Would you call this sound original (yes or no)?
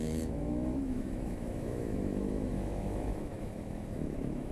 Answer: no